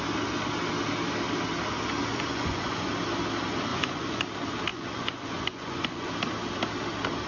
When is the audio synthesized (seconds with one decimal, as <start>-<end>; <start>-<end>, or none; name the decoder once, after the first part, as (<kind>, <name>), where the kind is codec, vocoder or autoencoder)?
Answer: 2.1-2.9 (vocoder, Vocos); 3.7-4.2; 4.7-6.1